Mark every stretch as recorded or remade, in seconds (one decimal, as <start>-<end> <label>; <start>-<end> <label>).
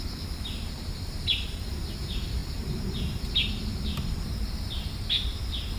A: 0.0-5.8 remade